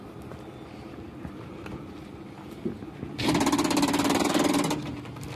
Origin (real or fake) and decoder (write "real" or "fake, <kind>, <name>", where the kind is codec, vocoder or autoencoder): real